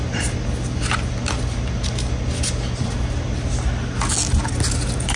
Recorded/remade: recorded